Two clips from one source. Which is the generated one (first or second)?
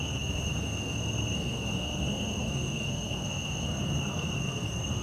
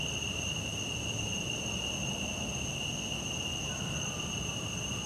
first